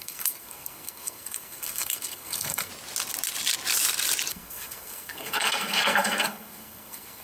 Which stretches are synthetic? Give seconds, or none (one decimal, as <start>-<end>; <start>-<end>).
0.0-2.7; 4.3-7.2